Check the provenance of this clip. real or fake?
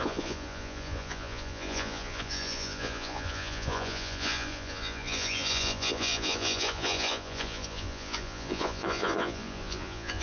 fake